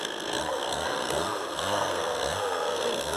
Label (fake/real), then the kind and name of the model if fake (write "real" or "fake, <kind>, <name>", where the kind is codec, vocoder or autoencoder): fake, codec, SNAC